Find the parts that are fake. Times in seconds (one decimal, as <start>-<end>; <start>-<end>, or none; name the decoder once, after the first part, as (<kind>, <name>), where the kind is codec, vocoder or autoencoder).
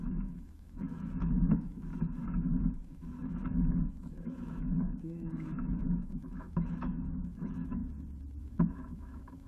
0.0-1.9 (autoencoder, DAC-VAE); 2.7-7.8; 8.4-9.5